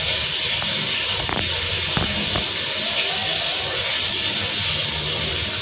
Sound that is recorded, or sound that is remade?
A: remade